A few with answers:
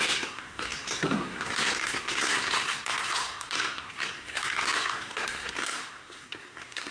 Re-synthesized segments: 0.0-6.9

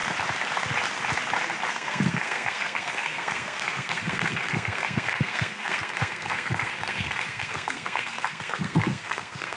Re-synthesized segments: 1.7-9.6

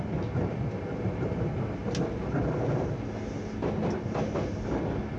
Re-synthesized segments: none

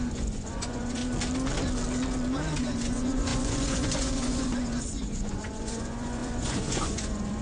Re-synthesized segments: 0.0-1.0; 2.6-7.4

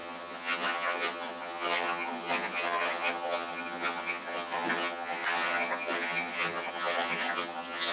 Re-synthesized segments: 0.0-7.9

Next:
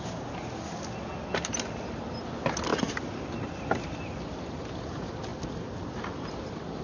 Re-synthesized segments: 2.7-4.6

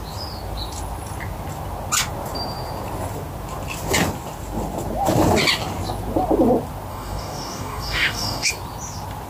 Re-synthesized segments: 6.9-8.5